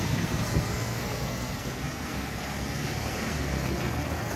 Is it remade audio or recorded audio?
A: remade